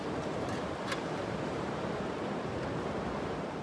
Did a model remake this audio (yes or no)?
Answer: yes